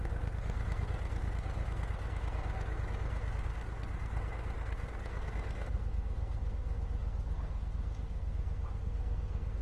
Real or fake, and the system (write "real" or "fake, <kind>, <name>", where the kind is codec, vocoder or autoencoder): fake, codec, SNAC